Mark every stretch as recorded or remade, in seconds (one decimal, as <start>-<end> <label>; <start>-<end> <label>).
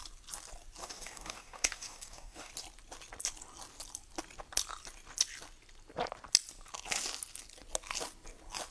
0.0-0.8 recorded; 0.8-2.5 remade; 2.5-8.7 recorded